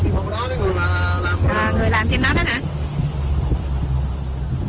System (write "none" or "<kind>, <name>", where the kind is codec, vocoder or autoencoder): none